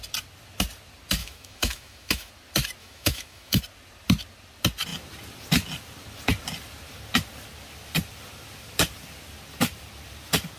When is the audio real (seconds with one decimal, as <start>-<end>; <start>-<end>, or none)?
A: 0.0-1.2; 2.3-2.8; 3.6-10.6